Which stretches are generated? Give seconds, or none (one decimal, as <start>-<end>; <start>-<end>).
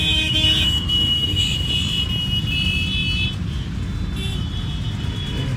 0.0-1.7